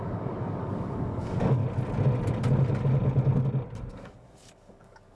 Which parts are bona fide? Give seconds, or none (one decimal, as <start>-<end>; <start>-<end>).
1.6-3.9